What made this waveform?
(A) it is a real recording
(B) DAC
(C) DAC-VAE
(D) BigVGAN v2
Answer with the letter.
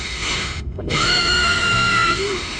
C